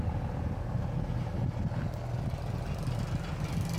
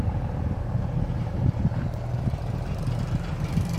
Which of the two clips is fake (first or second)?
second